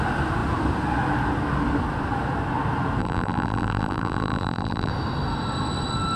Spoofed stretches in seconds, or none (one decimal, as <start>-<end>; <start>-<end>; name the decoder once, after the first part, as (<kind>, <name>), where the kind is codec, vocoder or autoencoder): 3.0-4.9 (vocoder, BigVGAN v2)